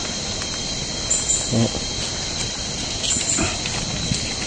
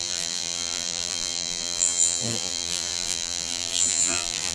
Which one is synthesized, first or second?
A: second